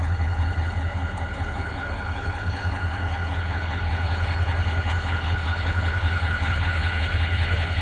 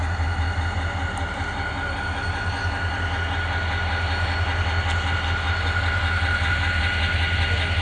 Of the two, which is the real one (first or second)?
second